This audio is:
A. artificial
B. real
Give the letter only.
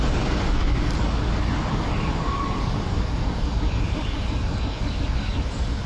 A